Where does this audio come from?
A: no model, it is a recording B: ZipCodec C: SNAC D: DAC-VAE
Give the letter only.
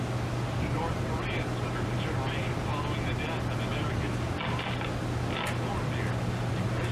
A